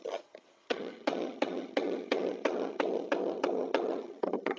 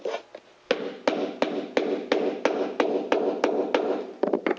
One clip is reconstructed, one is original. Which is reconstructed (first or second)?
first